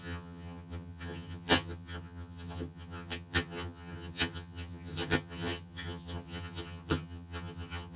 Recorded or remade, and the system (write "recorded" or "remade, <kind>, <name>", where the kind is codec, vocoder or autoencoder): remade, vocoder, HiFi-GAN